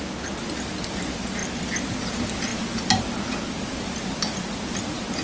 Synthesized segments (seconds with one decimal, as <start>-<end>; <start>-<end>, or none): none